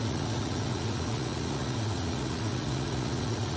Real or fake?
fake